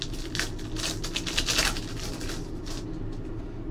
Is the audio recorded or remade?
recorded